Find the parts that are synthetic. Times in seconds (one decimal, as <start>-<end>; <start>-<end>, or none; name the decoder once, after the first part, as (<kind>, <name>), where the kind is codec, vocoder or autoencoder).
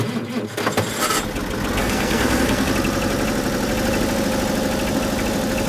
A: 1.8-2.7 (codec, SNAC)